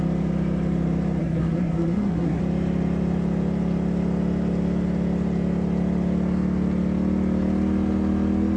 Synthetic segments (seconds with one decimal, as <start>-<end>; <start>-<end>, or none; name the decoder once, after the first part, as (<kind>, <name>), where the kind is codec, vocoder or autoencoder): 1.2-2.4 (codec, SNAC)